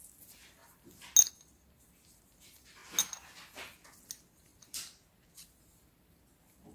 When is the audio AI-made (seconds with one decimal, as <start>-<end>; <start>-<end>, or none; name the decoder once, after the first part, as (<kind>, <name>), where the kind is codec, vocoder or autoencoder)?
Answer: none